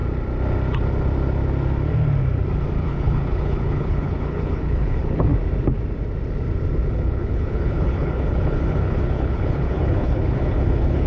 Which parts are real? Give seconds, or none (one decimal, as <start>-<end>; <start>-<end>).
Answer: 0.0-2.8; 5.3-6.9